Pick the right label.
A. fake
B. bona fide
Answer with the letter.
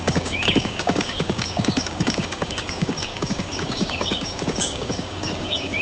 A